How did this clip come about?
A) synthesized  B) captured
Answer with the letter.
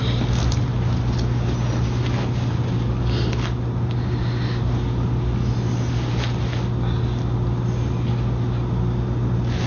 B